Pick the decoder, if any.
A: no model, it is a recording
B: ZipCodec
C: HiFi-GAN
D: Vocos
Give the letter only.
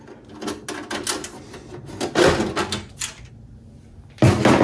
A